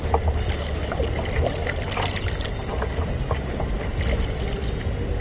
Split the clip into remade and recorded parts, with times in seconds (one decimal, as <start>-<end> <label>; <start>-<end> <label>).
0.0-5.2 recorded